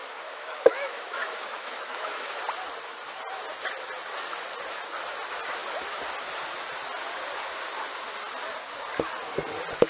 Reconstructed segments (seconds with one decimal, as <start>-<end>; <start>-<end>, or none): 0.0-2.4